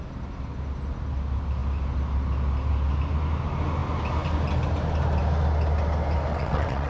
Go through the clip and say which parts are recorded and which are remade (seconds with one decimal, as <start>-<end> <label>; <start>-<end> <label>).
0.0-6.3 recorded; 6.3-6.9 remade